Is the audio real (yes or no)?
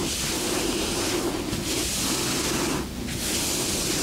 yes